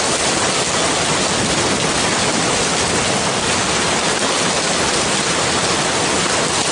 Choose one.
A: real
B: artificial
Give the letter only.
A